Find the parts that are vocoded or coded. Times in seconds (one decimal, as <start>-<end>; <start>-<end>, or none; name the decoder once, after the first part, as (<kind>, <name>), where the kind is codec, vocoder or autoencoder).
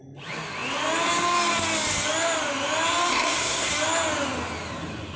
3.1-3.7 (codec, SNAC)